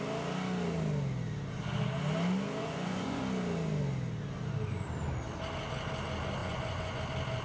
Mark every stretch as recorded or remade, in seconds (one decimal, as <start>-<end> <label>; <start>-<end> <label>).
0.0-2.6 recorded; 2.6-3.2 remade; 3.2-6.4 recorded; 6.4-7.0 remade; 7.0-7.4 recorded